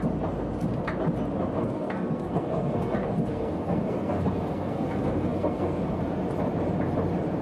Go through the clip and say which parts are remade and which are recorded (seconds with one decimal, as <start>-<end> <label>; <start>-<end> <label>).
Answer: 0.0-1.6 recorded; 1.6-6.0 remade; 6.0-7.4 recorded